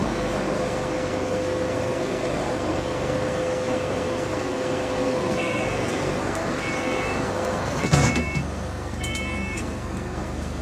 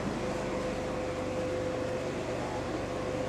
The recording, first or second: second